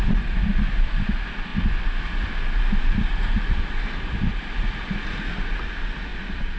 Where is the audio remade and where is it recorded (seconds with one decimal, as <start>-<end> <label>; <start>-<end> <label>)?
0.0-6.1 recorded; 6.1-6.6 remade